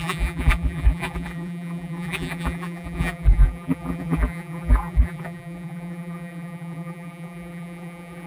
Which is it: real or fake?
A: fake